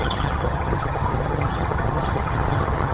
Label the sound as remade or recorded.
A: remade